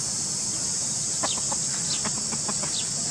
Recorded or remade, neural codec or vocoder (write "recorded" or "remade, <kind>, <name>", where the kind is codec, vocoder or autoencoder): recorded